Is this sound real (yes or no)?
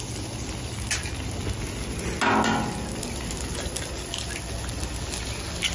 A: yes